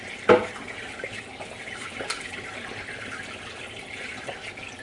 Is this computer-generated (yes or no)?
no